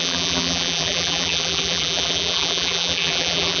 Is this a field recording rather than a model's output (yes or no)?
no